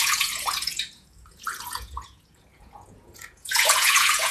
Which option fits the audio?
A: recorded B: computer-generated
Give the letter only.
B